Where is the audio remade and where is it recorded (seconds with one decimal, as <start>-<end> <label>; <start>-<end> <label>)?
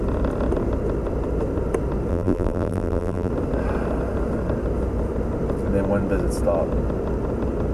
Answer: 0.0-2.1 recorded; 2.1-3.3 remade; 3.3-7.7 recorded